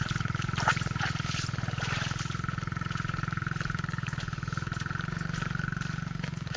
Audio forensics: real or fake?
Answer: fake